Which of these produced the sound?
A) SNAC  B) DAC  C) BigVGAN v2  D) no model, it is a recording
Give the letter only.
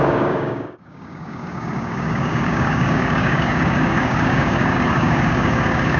B